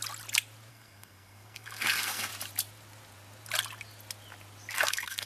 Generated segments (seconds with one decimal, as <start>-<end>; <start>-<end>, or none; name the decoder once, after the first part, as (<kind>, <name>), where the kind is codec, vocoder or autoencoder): 0.7-2.3 (codec, SNAC); 4.7-5.3